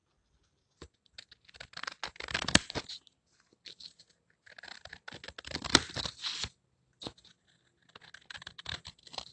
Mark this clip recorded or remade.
recorded